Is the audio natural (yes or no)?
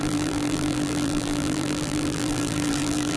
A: no